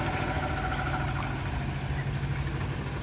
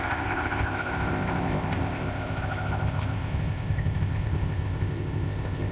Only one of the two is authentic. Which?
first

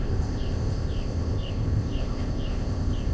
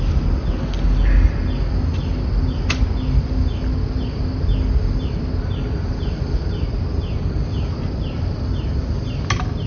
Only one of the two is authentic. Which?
second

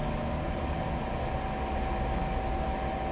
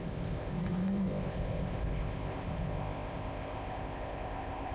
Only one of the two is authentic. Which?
first